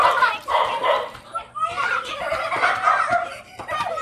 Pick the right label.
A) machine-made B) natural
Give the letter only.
A